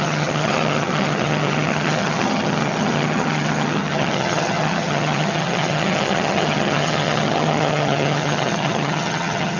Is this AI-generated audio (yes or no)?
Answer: yes